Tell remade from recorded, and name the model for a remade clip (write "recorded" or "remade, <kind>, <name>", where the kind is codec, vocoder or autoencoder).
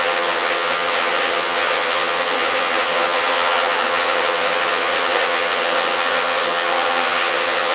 remade, vocoder, HiFi-GAN